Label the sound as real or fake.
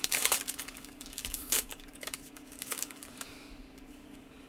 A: fake